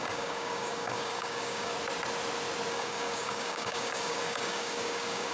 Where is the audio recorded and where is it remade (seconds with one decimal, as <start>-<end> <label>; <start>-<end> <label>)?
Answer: 0.0-1.7 remade; 1.7-2.7 recorded; 2.7-5.3 remade